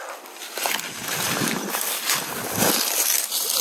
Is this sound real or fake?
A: real